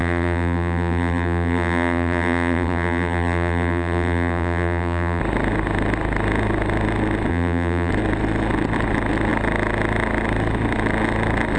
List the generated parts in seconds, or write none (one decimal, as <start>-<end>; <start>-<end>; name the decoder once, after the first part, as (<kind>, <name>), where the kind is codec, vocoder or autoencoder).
0.0-5.2 (vocoder, BigVGAN v2); 7.3-7.9